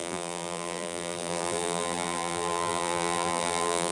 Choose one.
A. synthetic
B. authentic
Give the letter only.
A